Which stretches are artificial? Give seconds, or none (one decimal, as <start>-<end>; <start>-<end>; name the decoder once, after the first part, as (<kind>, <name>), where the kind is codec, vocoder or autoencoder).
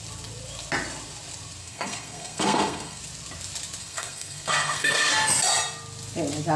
1.6-3.0 (codec, SNAC); 3.8-5.1